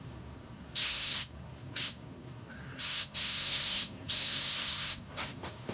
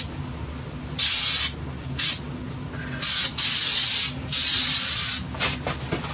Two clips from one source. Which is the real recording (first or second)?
second